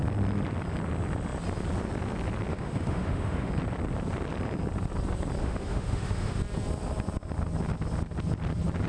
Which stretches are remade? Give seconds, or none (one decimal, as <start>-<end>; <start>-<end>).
2.5-3.5; 5.4-6.4

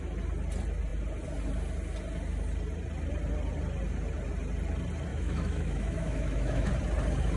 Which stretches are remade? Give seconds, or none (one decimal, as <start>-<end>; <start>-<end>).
5.1-6.7

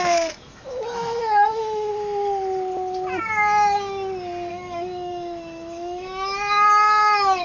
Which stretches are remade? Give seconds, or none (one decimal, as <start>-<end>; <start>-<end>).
0.0-1.9; 4.5-7.4

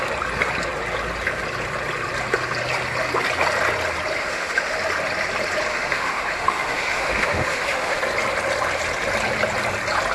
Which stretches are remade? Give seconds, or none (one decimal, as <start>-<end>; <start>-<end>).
4.2-4.8; 5.7-8.0

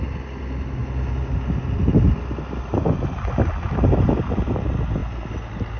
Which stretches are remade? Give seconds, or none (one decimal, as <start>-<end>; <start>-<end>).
none